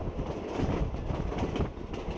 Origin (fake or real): real